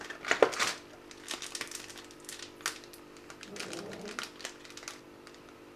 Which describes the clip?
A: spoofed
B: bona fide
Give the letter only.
B